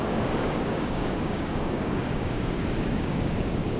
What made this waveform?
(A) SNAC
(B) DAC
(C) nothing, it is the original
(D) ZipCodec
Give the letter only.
B